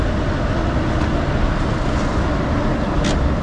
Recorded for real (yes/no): yes